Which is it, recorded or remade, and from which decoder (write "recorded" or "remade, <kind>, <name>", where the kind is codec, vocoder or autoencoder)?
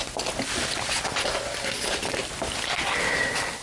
recorded